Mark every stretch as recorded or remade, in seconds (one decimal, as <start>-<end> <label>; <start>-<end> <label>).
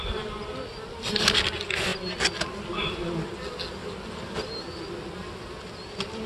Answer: 0.0-6.3 recorded